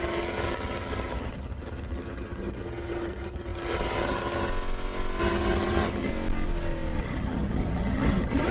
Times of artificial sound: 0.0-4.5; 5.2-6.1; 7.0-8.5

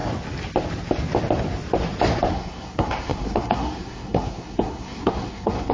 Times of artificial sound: 2.3-5.7

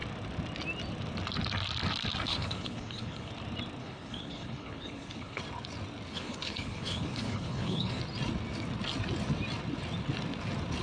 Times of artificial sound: 2.3-3.3; 3.8-5.4; 6.1-8.0

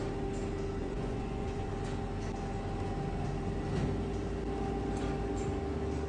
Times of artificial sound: 0.8-1.7

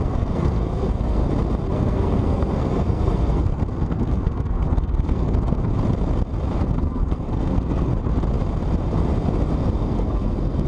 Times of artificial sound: 0.0-1.2; 1.7-5.7; 6.6-7.9; 9.8-10.7

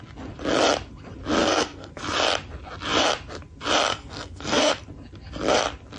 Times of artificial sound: 1.4-1.9; 3.9-4.8